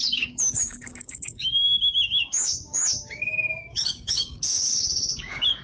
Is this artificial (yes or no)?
yes